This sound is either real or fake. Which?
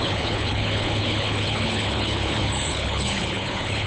fake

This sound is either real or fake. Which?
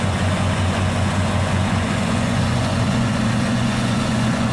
fake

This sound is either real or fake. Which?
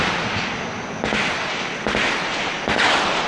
real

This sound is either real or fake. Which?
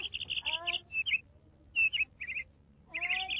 real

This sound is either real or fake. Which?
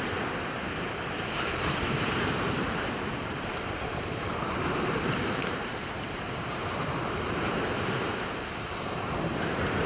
fake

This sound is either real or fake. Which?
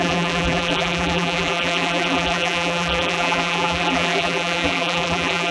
fake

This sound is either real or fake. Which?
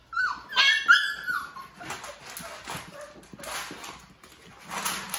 real